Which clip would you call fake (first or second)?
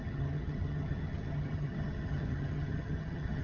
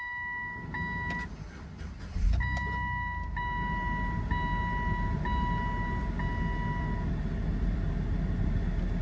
first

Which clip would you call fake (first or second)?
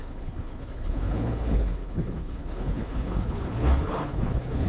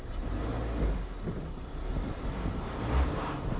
first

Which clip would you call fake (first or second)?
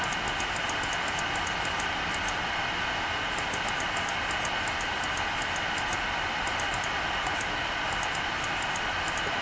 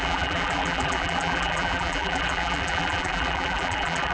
second